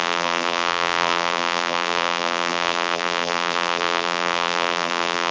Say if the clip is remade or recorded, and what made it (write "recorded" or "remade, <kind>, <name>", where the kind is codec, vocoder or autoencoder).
remade, vocoder, BigVGAN v2